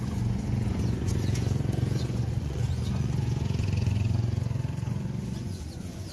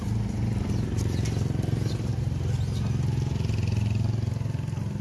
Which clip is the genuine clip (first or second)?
second